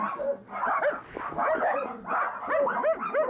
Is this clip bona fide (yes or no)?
yes